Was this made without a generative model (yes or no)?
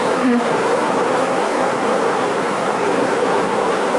no